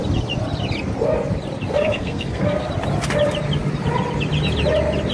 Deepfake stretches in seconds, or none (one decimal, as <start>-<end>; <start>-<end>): 1.7-2.7